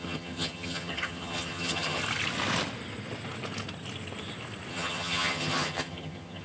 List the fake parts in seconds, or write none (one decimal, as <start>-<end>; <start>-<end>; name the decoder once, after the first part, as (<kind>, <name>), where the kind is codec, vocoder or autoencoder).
0.0-2.0 (vocoder, HiFi-GAN); 4.7-6.4